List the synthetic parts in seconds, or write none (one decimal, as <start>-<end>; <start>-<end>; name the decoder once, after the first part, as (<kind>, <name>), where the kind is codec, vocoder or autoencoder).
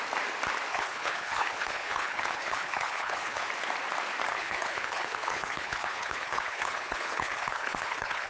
0.7-3.5 (codec, HILCodec); 4.3-8.3